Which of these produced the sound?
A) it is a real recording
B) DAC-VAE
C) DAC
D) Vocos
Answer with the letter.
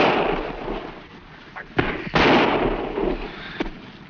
A